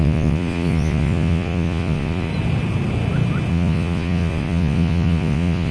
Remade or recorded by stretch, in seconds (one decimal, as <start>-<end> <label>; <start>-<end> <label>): 0.0-2.3 remade; 2.3-3.5 recorded; 3.5-5.7 remade